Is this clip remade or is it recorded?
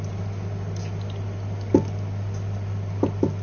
recorded